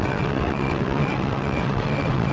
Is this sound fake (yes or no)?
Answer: yes